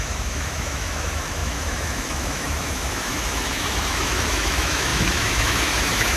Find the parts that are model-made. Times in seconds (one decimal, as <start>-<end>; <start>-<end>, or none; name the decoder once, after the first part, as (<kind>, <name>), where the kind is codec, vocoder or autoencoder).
0.0-6.2 (autoencoder, DAC-VAE)